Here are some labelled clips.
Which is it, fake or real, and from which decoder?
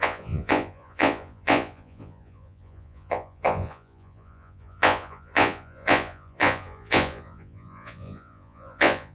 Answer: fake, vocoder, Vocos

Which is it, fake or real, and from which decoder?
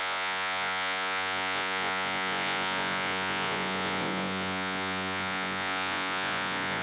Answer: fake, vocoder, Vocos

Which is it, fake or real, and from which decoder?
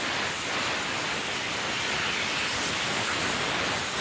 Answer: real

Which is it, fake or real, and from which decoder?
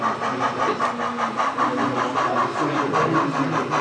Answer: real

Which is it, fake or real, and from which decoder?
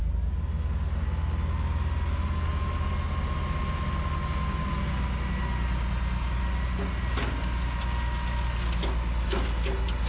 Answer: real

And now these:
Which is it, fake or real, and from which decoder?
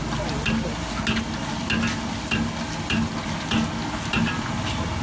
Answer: real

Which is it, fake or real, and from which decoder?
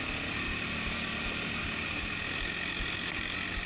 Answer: real